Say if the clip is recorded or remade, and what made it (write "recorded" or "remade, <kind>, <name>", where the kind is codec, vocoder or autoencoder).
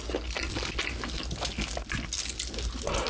recorded